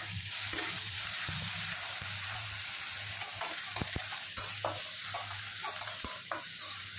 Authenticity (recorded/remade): remade